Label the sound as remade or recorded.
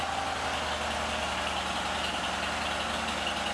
recorded